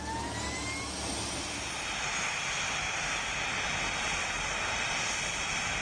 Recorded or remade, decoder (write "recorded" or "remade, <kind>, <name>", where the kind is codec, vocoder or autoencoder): recorded